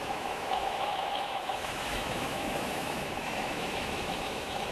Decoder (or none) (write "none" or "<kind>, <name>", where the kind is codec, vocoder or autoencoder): autoencoder, DAC-VAE